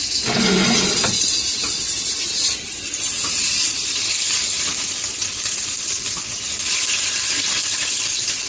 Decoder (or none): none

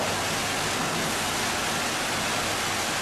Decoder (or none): none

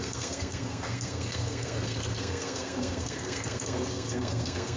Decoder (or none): codec, SNAC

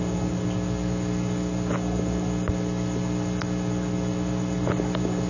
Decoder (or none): none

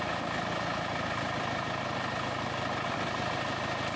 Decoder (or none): none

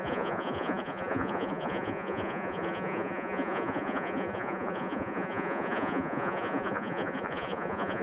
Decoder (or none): vocoder, Vocos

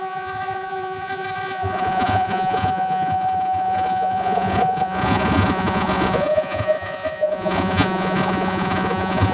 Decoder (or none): vocoder, Vocos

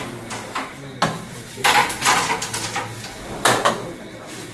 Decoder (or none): none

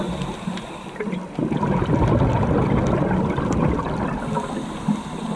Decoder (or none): none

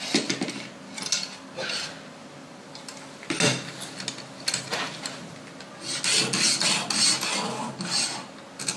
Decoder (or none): none